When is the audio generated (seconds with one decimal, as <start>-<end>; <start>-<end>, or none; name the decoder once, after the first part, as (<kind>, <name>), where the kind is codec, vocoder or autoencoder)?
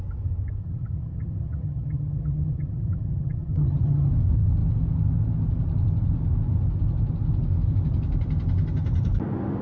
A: 0.6-4.1 (vocoder, HiFi-GAN)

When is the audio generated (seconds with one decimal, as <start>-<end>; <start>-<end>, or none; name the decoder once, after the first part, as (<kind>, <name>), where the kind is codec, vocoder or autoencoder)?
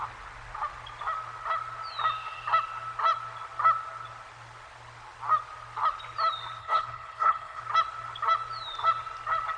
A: 6.6-7.6 (codec, HILCodec)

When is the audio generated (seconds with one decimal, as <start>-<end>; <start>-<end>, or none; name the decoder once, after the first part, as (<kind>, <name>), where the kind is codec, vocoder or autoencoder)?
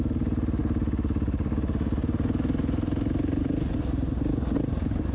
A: none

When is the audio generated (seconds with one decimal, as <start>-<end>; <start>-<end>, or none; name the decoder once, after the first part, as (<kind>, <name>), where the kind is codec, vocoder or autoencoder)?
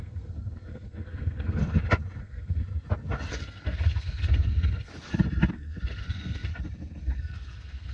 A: 0.0-1.6 (codec, SNAC); 2.2-2.6; 3.3-4.9; 5.5-6.5; 7.0-7.9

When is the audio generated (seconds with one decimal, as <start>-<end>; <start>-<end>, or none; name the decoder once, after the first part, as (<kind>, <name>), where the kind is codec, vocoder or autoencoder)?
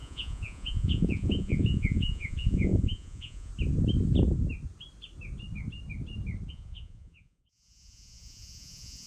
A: 0.0-3.5 (vocoder, Vocos); 6.5-9.1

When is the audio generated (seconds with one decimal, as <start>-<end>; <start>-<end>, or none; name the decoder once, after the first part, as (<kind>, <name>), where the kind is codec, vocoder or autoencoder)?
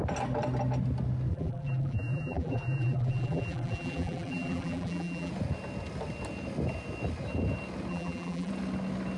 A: 1.3-5.3 (vocoder, BigVGAN v2); 7.9-8.5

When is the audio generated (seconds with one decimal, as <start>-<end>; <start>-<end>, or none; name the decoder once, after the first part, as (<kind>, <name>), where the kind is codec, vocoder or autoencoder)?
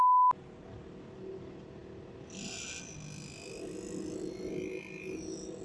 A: none